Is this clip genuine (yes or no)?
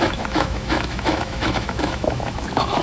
no